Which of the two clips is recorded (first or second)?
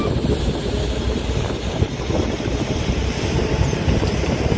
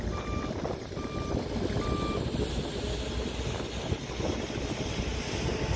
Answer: second